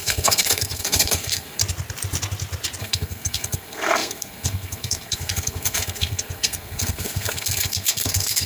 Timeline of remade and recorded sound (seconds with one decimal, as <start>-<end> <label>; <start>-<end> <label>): 0.0-1.6 remade; 1.6-2.8 recorded; 2.8-8.5 remade